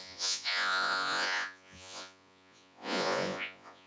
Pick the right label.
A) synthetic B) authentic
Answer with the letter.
A